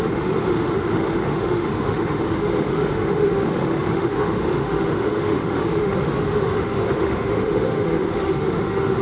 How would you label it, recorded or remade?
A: remade